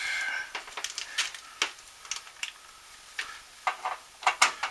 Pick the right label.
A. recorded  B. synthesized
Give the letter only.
A